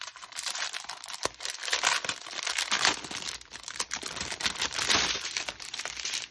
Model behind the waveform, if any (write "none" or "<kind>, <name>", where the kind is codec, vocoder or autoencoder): vocoder, BigVGAN v2